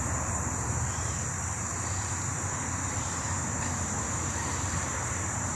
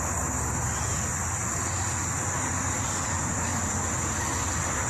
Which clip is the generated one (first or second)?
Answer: first